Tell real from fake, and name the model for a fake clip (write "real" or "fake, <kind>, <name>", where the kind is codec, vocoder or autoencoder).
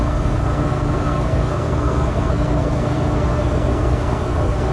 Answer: fake, codec, SNAC